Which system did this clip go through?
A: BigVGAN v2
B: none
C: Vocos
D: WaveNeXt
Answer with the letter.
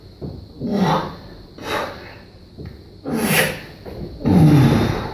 B